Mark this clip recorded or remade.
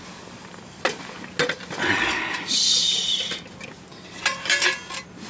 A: recorded